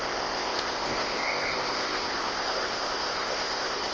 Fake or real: fake